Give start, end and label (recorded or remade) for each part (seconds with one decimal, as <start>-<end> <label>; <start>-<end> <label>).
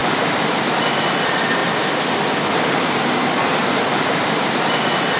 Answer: 0.0-5.2 recorded